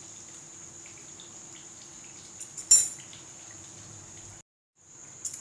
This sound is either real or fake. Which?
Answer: real